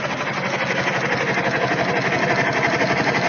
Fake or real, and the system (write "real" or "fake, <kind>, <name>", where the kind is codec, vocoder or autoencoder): real